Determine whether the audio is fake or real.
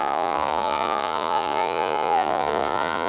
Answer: fake